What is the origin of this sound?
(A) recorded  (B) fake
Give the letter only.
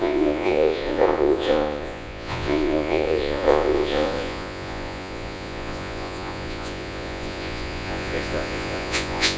B